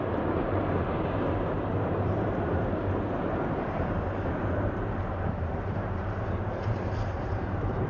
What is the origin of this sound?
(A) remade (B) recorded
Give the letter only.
A